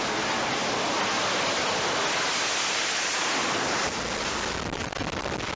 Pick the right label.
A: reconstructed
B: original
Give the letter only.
B